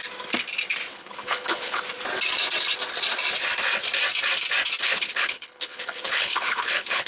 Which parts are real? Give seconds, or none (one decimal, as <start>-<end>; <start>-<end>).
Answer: 0.0-0.9; 1.8-4.8

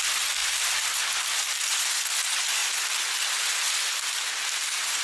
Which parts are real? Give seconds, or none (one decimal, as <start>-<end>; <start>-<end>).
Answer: 0.0-5.0

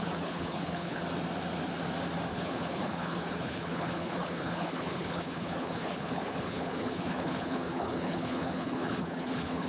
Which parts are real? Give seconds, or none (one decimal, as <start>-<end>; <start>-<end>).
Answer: 1.0-2.3

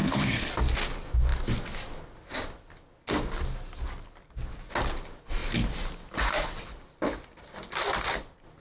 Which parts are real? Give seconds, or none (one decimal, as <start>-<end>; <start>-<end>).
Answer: 0.5-8.6

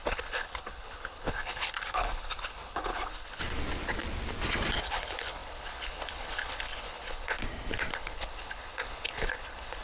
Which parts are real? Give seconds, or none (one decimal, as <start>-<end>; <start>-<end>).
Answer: 3.4-4.8; 7.4-7.9

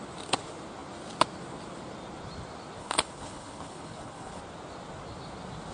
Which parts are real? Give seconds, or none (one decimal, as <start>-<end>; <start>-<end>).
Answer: 0.0-2.8; 4.4-5.7

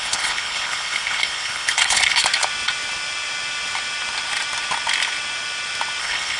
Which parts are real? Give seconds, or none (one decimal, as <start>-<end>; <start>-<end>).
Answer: 2.2-6.0

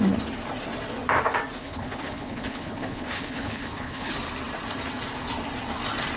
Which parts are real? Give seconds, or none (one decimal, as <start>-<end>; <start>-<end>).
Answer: 0.0-1.6; 4.1-6.2